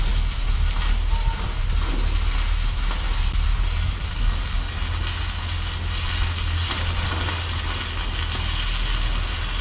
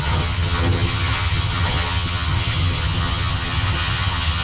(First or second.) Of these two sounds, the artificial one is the second